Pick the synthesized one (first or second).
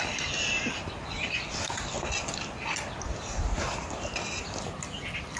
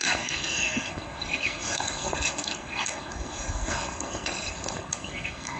second